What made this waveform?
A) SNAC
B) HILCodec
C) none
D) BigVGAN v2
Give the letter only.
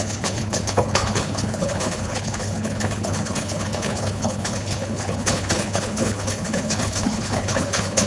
B